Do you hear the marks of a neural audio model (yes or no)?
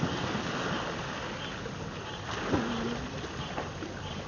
no